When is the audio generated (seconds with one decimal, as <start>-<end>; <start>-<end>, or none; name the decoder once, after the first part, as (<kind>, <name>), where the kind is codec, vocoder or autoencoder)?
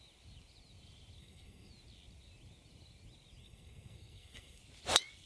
1.2-1.7 (codec, SNAC); 3.4-4.6